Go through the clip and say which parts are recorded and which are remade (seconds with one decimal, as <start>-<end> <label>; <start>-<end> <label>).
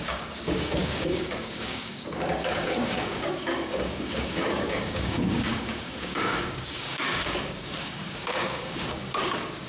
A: 0.0-9.7 remade